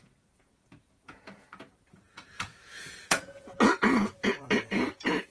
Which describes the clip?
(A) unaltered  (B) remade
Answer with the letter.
B